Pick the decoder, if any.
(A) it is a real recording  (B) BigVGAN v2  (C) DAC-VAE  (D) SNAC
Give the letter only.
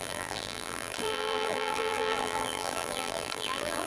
B